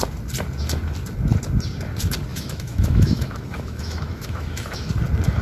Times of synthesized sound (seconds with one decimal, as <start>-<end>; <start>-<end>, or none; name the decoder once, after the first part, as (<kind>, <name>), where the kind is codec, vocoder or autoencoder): 2.3-4.9 (autoencoder, DAC-VAE)